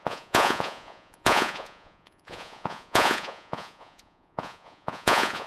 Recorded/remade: remade